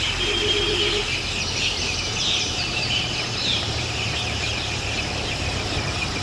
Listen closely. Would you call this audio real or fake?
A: fake